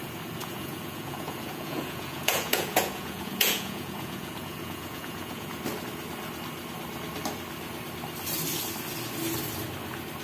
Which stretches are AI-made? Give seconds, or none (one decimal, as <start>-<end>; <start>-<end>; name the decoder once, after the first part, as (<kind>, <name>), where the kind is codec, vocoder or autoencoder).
0.4-5.6 (vocoder, Vocos)